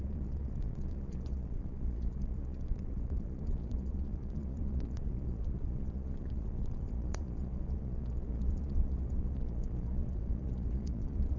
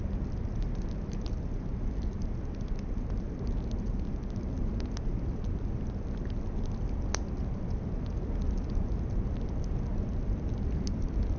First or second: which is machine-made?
first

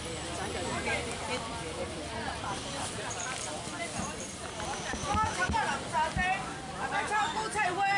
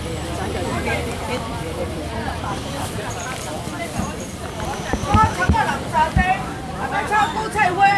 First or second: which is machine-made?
second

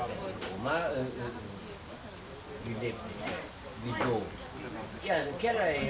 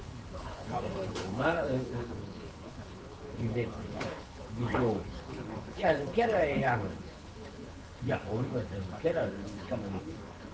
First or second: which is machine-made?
second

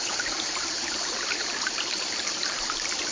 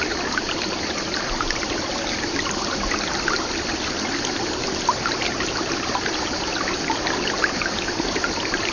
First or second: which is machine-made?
first